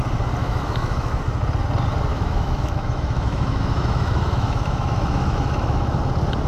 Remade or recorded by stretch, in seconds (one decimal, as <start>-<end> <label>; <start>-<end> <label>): 0.0-0.4 recorded; 0.4-1.2 remade; 1.2-2.1 recorded; 2.1-6.0 remade; 6.0-6.5 recorded